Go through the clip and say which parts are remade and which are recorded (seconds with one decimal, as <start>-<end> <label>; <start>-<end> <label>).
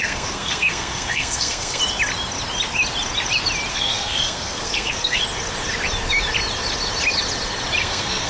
0.0-1.8 remade; 1.8-3.7 recorded; 3.7-5.2 remade; 5.2-7.8 recorded; 7.8-8.3 remade